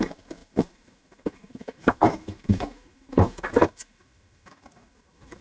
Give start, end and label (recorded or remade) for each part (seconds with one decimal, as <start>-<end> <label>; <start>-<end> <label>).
0.0-5.4 remade